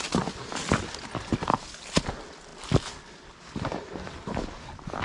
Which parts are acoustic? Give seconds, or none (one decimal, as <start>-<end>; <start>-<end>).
0.0-5.0